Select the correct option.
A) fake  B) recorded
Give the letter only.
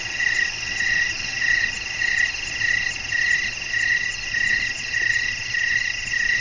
B